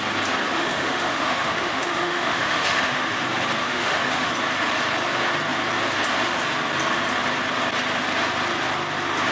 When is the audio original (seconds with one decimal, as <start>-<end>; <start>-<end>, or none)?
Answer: 0.0-0.5; 3.2-3.6; 4.3-9.3